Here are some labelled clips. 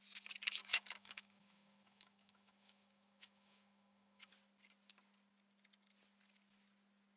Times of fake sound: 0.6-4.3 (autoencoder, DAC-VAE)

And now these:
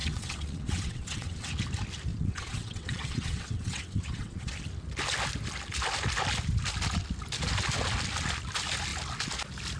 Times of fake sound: 0.0-1.5 (vocoder, WaveNeXt); 2.1-4.5

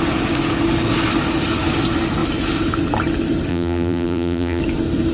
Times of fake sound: 3.5-4.6 (vocoder, BigVGAN v2)